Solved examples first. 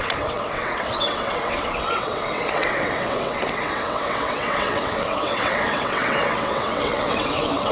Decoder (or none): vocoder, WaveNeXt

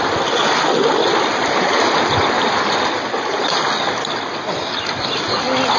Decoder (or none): none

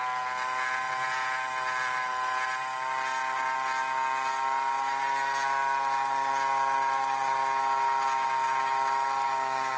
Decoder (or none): none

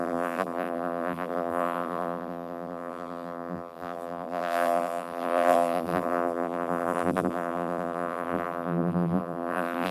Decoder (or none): vocoder, BigVGAN v2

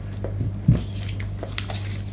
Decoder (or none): none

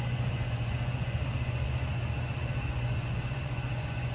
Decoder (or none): vocoder, Vocos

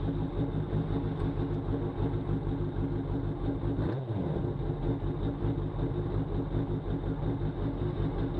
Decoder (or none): none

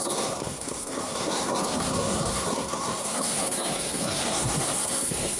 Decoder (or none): codec, SNAC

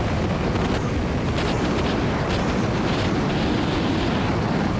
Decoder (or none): none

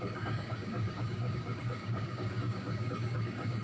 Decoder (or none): codec, DAC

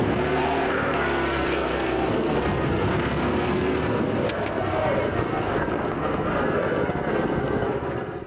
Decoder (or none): codec, SNAC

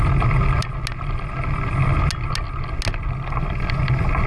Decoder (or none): none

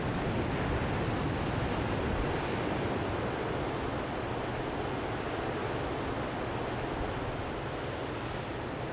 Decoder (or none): none